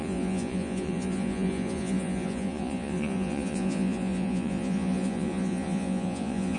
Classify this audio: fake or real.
fake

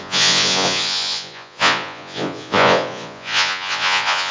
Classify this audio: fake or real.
fake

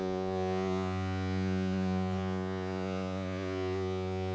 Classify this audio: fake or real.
fake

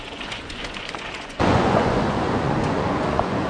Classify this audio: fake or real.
fake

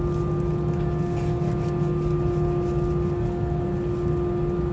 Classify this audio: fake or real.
real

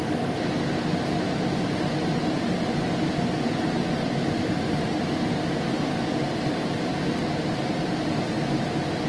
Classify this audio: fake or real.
real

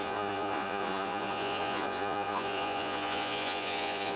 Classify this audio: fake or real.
fake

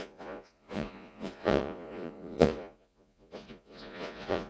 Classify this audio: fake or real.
fake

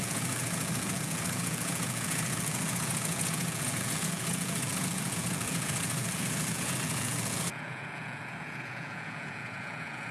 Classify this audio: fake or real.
fake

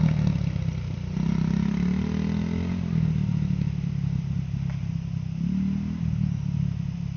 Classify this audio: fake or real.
real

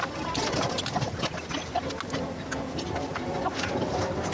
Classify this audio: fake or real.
real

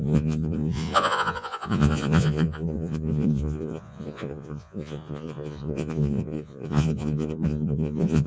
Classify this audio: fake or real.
fake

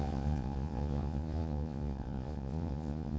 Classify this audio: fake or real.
fake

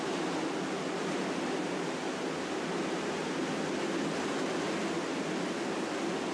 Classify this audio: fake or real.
real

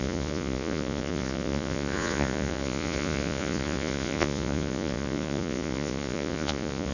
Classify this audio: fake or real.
fake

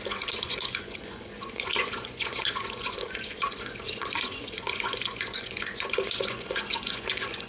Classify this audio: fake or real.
fake